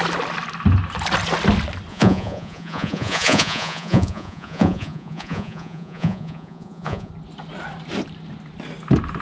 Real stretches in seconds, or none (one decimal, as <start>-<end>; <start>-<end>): 0.0-1.9; 7.1-9.2